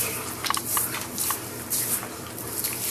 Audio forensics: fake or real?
fake